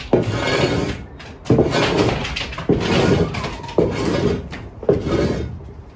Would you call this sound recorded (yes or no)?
yes